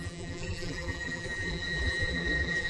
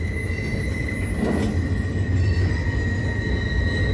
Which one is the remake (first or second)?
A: first